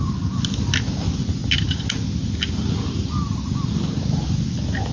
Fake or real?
real